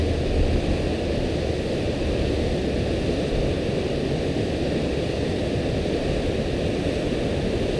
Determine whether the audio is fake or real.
real